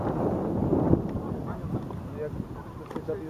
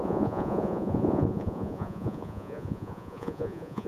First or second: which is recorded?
first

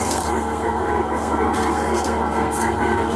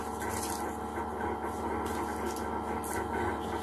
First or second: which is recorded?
second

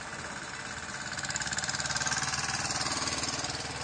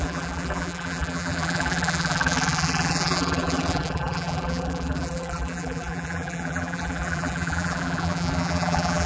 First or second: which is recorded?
first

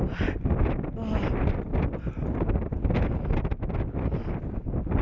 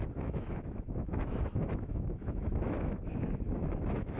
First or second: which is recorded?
first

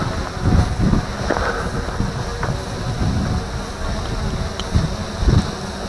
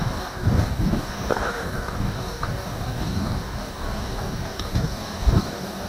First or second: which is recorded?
first